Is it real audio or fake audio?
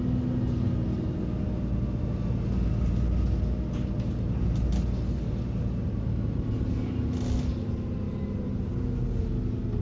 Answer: real